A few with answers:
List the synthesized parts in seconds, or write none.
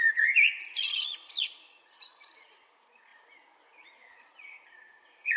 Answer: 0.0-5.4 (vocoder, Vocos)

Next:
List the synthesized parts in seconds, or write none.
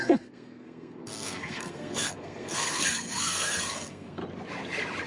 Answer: 0.0-4.2 (codec, SNAC)